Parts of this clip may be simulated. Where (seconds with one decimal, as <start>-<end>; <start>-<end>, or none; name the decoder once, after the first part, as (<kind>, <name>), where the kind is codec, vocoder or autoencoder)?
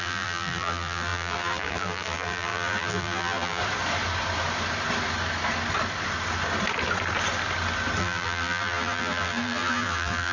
0.0-3.6 (vocoder, BigVGAN v2); 8.0-10.3